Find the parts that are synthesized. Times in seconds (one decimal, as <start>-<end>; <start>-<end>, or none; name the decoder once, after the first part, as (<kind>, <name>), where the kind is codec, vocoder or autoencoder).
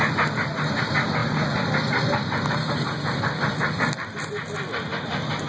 none